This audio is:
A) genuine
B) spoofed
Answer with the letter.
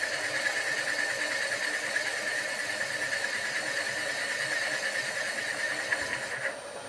A